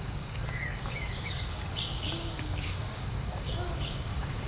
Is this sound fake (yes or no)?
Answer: yes